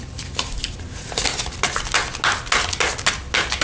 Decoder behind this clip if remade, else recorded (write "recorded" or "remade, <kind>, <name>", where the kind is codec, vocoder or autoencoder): recorded